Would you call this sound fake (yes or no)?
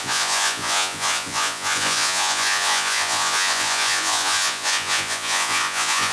yes